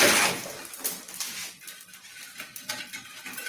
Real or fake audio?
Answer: real